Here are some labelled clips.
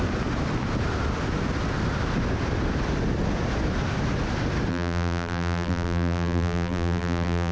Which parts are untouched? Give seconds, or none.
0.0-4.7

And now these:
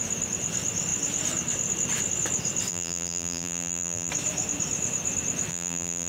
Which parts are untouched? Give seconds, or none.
0.0-2.7; 4.1-5.5

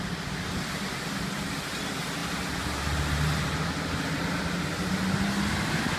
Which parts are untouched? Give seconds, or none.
0.0-6.0

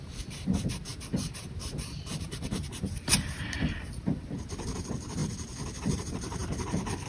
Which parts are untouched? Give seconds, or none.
5.2-5.8

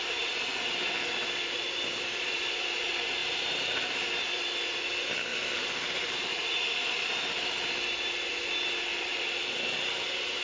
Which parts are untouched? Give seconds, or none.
0.0-1.1; 2.8-3.2; 4.1-5.3; 6.9-8.9; 9.5-10.4

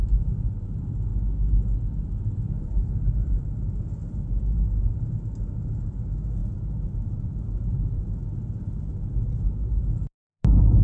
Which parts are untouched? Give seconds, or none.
1.1-2.6

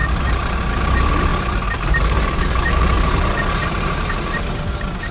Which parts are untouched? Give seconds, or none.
0.6-1.3; 4.4-5.1